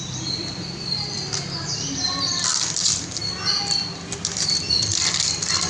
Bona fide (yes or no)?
no